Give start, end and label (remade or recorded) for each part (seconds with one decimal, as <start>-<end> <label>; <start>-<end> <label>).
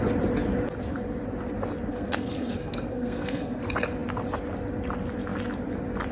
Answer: 0.0-1.9 recorded; 1.9-3.6 remade; 3.6-6.1 recorded